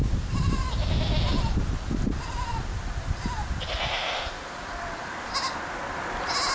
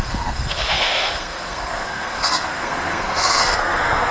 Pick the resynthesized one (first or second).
second